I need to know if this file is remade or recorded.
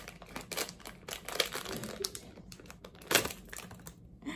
recorded